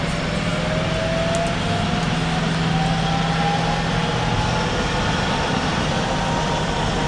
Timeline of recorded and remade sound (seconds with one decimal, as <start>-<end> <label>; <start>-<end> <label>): 0.0-7.1 recorded